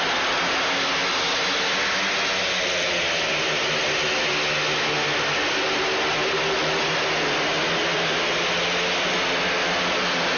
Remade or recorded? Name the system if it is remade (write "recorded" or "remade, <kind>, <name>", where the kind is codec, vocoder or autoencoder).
recorded